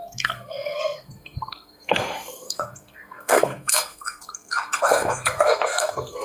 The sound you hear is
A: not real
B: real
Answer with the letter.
A